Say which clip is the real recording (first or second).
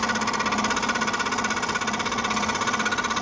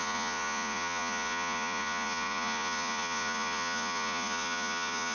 first